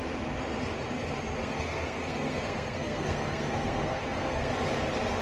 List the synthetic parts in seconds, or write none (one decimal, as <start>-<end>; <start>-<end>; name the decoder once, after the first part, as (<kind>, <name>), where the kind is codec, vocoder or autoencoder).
1.4-4.5 (codec, SNAC)